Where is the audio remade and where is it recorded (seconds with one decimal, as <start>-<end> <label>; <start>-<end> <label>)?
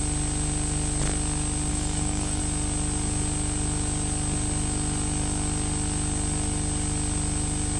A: 0.0-1.7 recorded; 1.7-2.4 remade; 2.4-7.8 recorded